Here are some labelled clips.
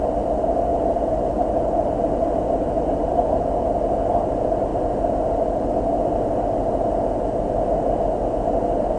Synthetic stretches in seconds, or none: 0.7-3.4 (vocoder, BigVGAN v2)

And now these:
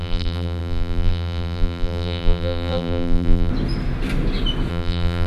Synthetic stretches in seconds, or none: 0.0-3.5 (vocoder, BigVGAN v2); 4.7-5.3

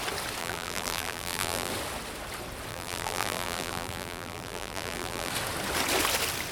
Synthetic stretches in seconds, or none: 0.4-1.7 (vocoder, BigVGAN v2); 2.7-5.3

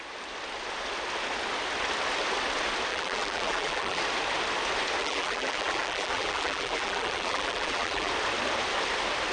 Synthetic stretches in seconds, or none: 2.9-4.0 (vocoder, BigVGAN v2); 5.0-8.1